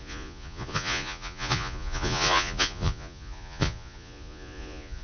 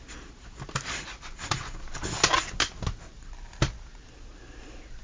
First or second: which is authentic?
second